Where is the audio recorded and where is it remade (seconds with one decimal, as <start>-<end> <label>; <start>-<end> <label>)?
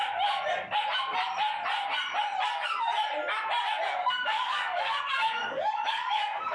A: 0.0-3.9 recorded; 3.9-6.5 remade